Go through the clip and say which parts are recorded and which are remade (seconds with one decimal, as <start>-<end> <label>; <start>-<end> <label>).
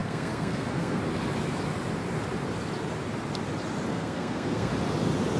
0.0-1.0 remade; 1.0-3.9 recorded; 3.9-4.7 remade; 4.7-5.4 recorded